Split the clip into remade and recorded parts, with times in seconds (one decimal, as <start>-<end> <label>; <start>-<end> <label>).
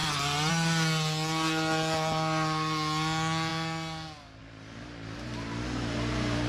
0.0-6.5 recorded